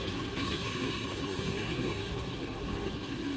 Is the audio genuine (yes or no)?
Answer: no